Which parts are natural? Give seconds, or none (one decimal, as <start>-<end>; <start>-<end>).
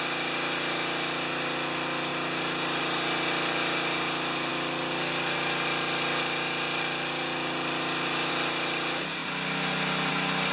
0.0-10.5